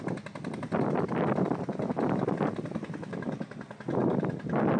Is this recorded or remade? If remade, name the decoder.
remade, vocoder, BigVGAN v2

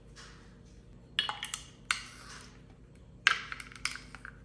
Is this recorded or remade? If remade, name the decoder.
recorded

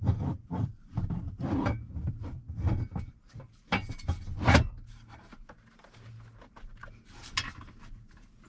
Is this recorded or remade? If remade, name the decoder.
recorded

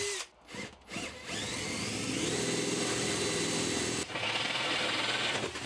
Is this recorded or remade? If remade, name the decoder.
recorded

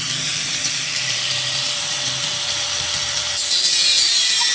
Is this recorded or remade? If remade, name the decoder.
remade, vocoder, BigVGAN v2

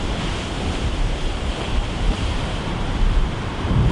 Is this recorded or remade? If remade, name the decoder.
remade, vocoder, BigVGAN v2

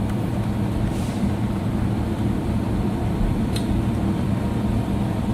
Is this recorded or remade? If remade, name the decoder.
remade, vocoder, BigVGAN v2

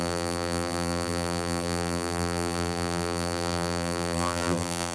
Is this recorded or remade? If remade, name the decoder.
remade, vocoder, BigVGAN v2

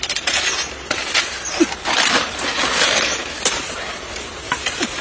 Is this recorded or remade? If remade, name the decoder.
recorded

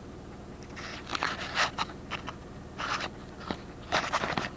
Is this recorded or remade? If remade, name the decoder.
recorded